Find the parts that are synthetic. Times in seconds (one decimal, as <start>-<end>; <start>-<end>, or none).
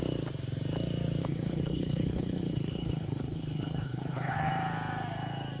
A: 1.2-4.5